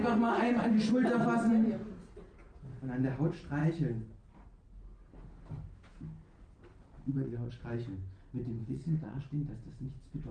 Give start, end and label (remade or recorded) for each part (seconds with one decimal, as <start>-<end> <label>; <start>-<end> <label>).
0.0-7.0 recorded; 7.0-7.5 remade; 7.5-8.6 recorded; 8.6-9.2 remade; 9.2-10.3 recorded